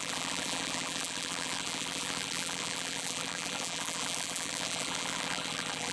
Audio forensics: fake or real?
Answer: fake